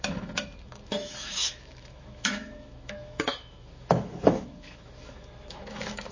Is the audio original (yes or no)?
no